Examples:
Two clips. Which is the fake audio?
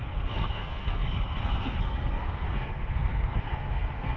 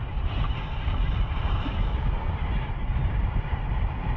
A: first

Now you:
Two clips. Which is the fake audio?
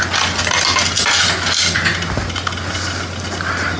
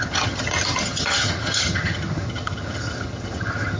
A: second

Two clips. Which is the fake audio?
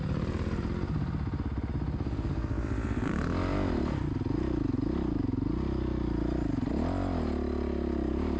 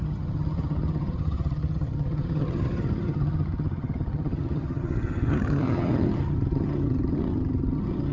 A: second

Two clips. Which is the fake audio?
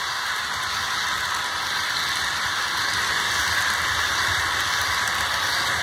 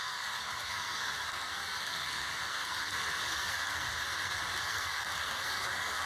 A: second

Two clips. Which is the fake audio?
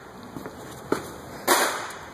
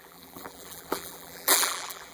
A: second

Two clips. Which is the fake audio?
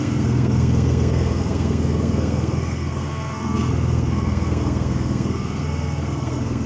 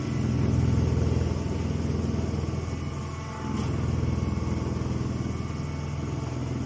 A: first